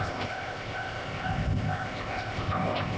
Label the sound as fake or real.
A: fake